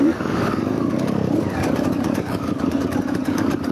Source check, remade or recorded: remade